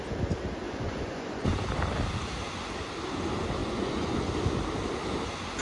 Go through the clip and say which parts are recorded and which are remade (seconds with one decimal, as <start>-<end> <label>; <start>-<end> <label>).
0.0-0.6 recorded; 0.6-1.5 remade; 1.5-3.6 recorded; 3.6-4.3 remade; 4.3-5.6 recorded